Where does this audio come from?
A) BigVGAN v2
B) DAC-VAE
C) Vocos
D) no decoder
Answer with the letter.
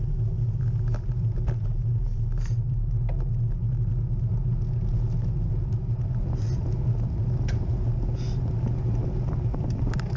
D